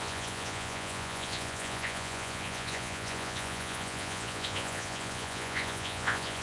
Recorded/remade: remade